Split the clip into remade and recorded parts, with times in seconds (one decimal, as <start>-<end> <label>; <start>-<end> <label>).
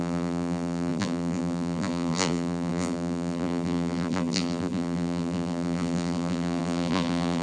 0.0-7.4 remade